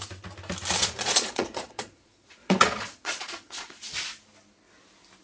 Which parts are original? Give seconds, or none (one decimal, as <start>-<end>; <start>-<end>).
0.0-0.8; 3.9-5.2